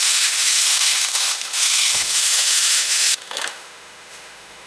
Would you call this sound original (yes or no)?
no